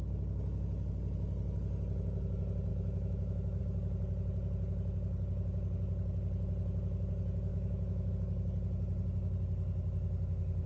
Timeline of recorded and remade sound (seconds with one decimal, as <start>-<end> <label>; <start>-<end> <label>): 0.0-2.7 recorded; 2.7-3.6 remade; 3.6-7.5 recorded; 7.5-8.1 remade; 8.1-10.7 recorded